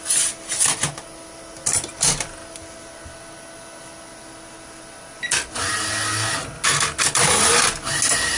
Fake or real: real